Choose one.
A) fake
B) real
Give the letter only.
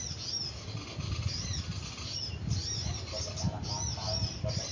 B